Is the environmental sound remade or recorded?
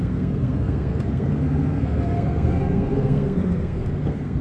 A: remade